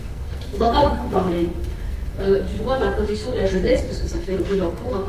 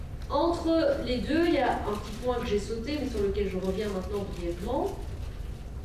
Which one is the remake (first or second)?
first